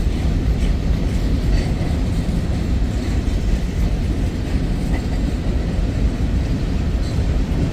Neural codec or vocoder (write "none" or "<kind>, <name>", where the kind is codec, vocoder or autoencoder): vocoder, BigVGAN v2